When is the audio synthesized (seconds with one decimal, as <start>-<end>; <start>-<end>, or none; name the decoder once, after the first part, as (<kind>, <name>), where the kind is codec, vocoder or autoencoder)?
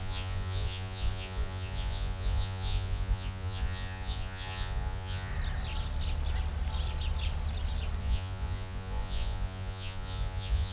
0.0-5.3 (vocoder, Vocos); 8.0-10.7